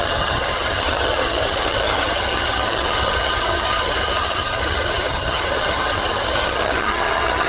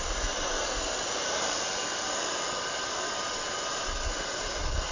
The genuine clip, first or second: second